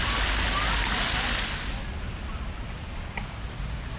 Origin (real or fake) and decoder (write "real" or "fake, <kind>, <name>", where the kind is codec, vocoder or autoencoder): real